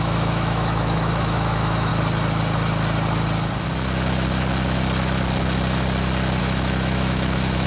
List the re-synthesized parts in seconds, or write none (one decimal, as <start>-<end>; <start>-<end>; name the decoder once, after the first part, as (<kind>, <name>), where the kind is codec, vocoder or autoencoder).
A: 0.0-1.9 (autoencoder, DAC-VAE); 6.4-7.7